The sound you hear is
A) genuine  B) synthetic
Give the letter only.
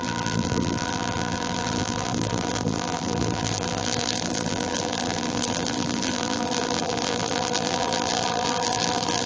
B